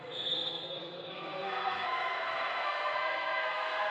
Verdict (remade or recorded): remade